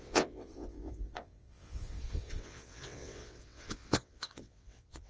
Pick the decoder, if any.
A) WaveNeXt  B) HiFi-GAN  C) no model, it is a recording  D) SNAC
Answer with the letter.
A